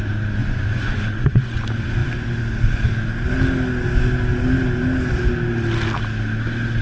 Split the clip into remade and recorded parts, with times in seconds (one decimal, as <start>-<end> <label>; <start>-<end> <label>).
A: 0.0-0.4 recorded; 0.4-1.6 remade; 1.6-6.8 recorded